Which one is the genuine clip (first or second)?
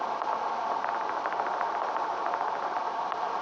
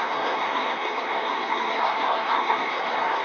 first